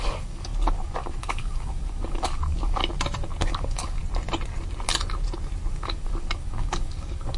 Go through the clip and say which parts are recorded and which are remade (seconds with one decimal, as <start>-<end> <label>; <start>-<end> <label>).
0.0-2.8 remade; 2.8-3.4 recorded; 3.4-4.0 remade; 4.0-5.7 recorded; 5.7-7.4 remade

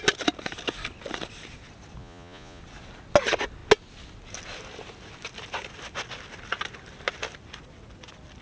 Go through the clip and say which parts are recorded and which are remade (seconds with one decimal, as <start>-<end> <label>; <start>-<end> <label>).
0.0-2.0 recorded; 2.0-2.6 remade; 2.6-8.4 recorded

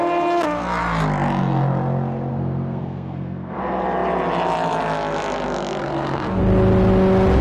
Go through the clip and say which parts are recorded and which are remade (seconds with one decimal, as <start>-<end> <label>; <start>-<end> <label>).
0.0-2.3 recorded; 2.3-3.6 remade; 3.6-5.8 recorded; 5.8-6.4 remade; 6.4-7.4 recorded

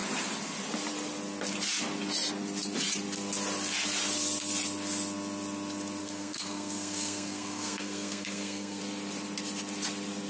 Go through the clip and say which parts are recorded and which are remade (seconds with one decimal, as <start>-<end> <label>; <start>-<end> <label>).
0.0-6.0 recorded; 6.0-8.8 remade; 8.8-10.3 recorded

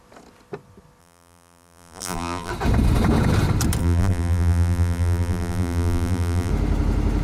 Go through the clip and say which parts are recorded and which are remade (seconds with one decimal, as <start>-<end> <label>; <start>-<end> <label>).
0.0-1.0 recorded; 1.0-2.5 remade; 2.5-3.8 recorded; 3.8-6.5 remade; 6.5-7.2 recorded